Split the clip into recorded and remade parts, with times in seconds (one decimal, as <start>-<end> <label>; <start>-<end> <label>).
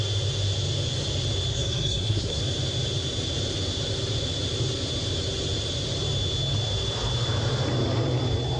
0.0-1.5 recorded; 1.5-2.4 remade; 2.4-8.6 recorded